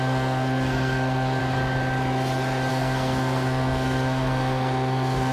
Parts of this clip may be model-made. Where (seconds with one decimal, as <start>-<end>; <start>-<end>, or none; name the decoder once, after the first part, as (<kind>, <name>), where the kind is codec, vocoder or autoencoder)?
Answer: 0.0-1.4 (codec, SNAC); 2.7-5.3